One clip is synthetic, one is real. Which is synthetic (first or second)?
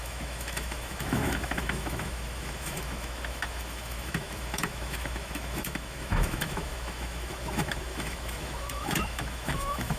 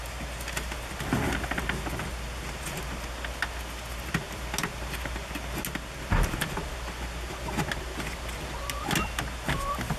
first